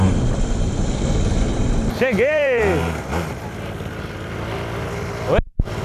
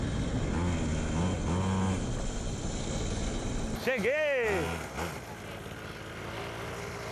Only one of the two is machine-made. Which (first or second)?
first